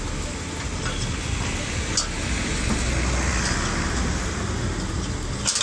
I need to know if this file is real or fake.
real